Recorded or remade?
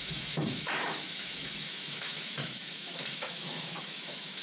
remade